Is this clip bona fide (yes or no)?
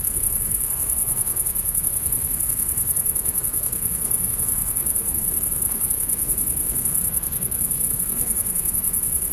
no